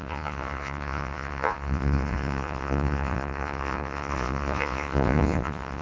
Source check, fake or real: fake